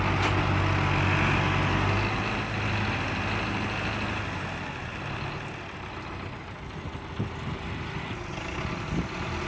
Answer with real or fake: real